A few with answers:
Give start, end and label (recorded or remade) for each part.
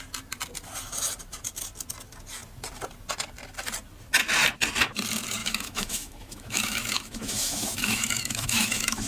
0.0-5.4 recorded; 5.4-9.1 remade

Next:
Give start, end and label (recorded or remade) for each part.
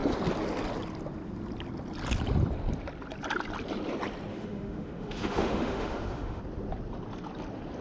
0.0-4.3 recorded; 4.3-6.4 remade; 6.4-7.8 recorded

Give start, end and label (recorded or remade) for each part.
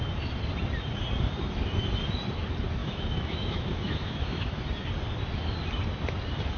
0.0-2.8 recorded; 2.8-4.6 remade; 4.6-6.6 recorded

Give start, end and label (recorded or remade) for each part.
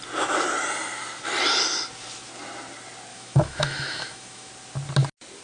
0.0-3.1 recorded; 3.1-4.5 remade; 4.5-5.4 recorded